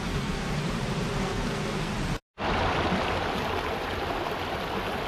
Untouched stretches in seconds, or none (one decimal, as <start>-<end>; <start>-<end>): 0.6-1.2; 1.9-5.1